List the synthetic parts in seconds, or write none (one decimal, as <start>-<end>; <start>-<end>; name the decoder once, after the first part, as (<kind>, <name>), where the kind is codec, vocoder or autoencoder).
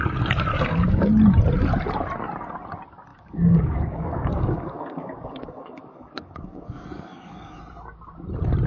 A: 0.5-1.1 (codec, DAC); 3.1-7.6